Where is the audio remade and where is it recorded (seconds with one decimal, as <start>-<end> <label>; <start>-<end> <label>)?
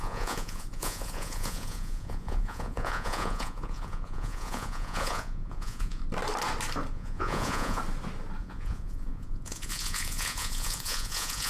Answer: 0.0-6.0 remade; 6.0-6.9 recorded; 6.9-7.8 remade; 7.8-8.4 recorded; 8.4-11.5 remade